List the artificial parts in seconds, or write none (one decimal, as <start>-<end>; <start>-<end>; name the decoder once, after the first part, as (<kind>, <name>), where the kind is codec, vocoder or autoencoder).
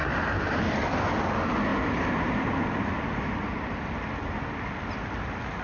0.0-0.6 (vocoder, BigVGAN v2)